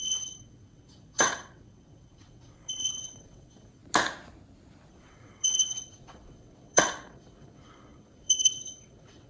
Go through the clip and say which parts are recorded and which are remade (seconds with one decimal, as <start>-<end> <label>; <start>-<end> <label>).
0.0-3.8 remade; 3.8-4.9 recorded; 4.9-9.3 remade